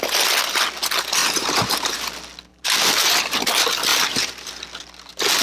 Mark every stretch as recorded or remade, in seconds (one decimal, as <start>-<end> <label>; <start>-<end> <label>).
0.0-1.2 recorded; 1.2-2.0 remade; 2.0-2.5 recorded; 2.5-3.5 remade; 3.5-3.9 recorded; 3.9-4.5 remade; 4.5-5.4 recorded